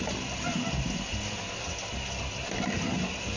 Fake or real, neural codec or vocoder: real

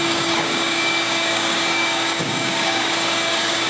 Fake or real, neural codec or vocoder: fake, codec, DAC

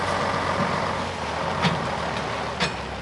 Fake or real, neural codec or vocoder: real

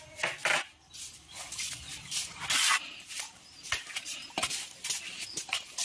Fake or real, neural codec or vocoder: real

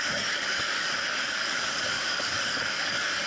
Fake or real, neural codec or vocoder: fake, codec, DAC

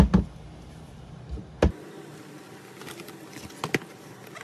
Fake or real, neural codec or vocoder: real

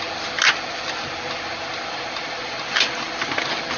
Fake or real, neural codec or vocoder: real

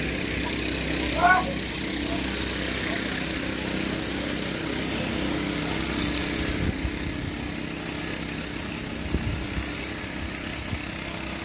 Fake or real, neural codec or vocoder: real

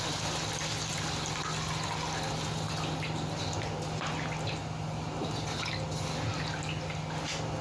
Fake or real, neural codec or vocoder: real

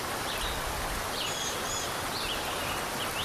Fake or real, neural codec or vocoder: real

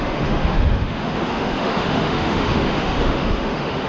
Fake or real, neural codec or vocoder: fake, autoencoder, DAC-VAE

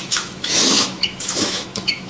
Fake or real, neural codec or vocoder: fake, autoencoder, DAC-VAE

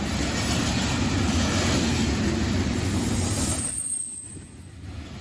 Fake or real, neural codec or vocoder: real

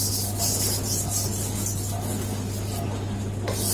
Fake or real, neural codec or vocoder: real